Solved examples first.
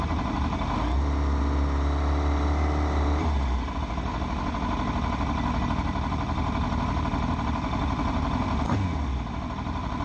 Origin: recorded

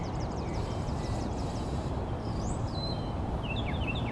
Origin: remade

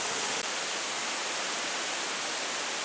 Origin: remade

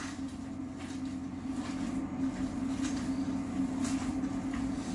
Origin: recorded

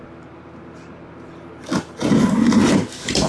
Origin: recorded